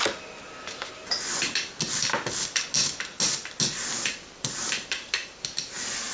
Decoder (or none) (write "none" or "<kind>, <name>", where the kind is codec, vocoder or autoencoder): none